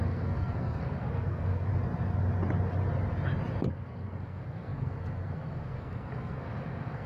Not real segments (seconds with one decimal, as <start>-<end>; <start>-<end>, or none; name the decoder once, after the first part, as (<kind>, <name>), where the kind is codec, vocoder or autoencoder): 0.0-1.7 (codec, SNAC); 3.7-7.1